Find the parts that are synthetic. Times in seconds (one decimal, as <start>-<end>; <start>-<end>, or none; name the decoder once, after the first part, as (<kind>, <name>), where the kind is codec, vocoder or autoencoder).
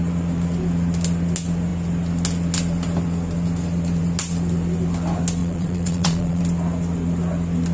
5.4-6.4 (vocoder, Vocos)